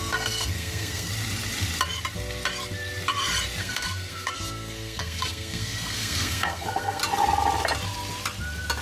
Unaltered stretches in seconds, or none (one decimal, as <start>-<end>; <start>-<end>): 1.1-3.6; 7.0-8.8